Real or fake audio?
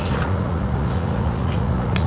fake